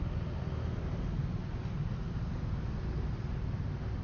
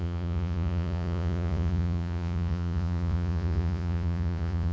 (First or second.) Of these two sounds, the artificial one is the second